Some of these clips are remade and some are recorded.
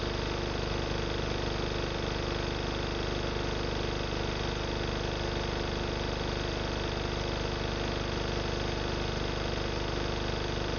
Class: recorded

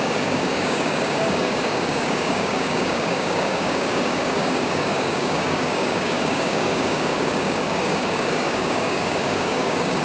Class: remade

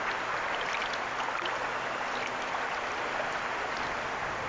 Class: recorded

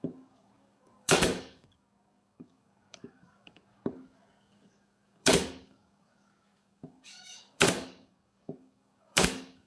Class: remade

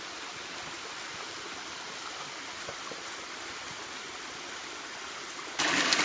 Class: recorded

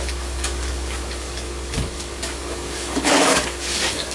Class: remade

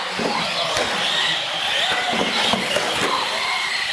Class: recorded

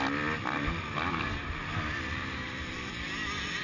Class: recorded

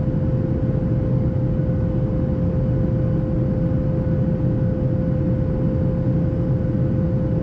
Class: recorded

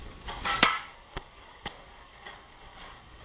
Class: remade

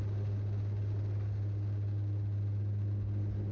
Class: recorded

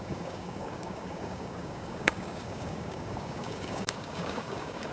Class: remade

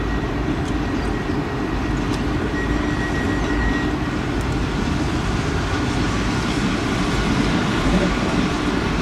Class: recorded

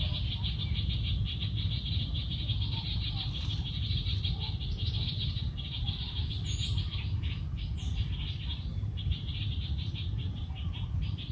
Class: recorded